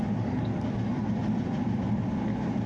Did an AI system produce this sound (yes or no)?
no